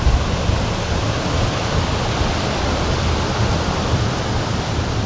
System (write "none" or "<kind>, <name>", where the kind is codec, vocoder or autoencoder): none